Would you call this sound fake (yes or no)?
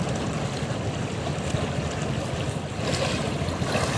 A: no